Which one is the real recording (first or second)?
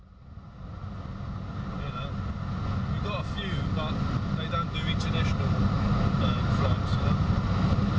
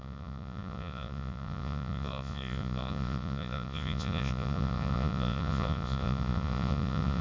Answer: first